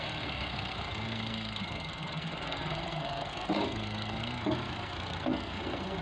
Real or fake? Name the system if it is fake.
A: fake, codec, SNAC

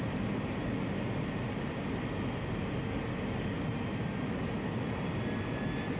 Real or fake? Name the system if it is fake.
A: real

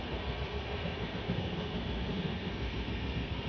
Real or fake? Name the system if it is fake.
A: fake, codec, SNAC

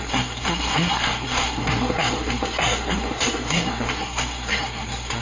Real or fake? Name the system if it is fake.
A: fake, codec, SNAC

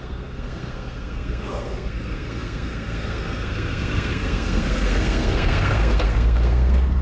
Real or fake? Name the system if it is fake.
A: fake, codec, SNAC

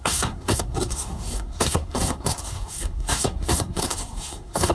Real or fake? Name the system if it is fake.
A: fake, codec, SNAC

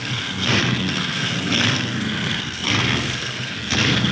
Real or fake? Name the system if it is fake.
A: fake, codec, SNAC